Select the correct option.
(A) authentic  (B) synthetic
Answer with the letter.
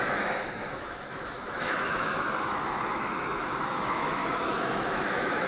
B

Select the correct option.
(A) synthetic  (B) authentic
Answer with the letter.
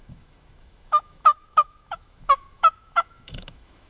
A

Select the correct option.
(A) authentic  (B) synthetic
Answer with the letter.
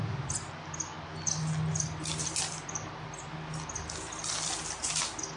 A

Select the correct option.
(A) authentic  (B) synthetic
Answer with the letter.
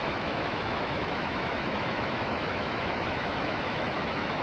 B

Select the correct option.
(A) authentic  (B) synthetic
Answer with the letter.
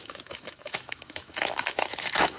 B